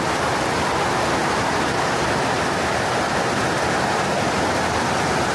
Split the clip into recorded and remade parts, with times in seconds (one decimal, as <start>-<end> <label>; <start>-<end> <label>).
0.0-1.2 recorded; 1.2-2.7 remade; 2.7-5.3 recorded